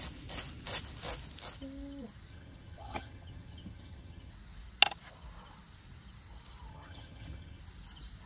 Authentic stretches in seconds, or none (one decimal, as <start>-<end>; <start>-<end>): 0.0-2.3; 4.3-6.7; 7.6-8.3